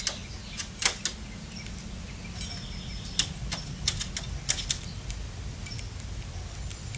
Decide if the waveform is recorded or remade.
recorded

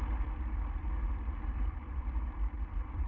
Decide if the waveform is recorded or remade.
remade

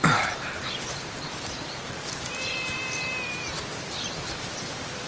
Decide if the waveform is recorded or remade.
remade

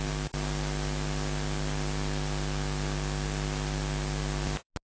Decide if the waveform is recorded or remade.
recorded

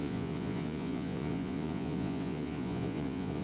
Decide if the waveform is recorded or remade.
remade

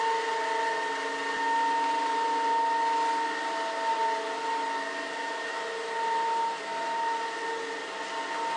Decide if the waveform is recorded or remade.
recorded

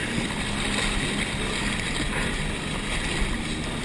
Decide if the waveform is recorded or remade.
recorded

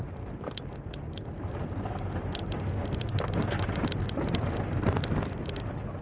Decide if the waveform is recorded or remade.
recorded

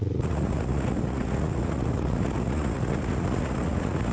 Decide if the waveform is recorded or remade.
remade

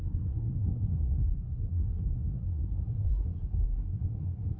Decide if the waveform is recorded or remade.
remade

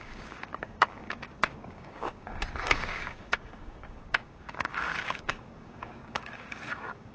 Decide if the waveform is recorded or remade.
remade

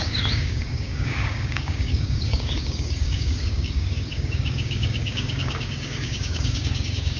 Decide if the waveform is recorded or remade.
remade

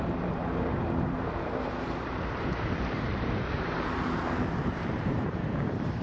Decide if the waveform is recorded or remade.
remade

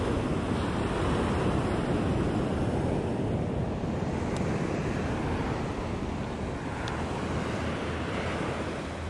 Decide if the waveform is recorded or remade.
recorded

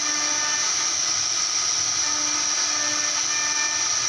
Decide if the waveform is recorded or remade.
recorded